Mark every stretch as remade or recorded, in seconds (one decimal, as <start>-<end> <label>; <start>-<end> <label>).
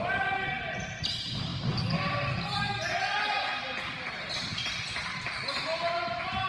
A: 0.0-6.5 recorded